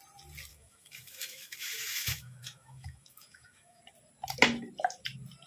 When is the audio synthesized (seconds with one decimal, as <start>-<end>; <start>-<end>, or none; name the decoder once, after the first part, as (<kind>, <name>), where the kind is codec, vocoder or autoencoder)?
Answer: 0.5-3.8 (autoencoder, DAC-VAE)